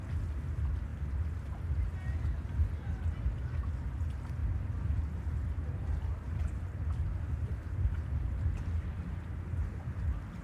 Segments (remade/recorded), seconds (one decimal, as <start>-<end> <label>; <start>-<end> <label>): 0.0-4.4 recorded; 4.4-9.3 remade; 9.3-10.4 recorded